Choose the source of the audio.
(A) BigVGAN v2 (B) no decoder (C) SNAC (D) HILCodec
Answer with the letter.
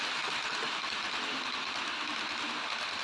B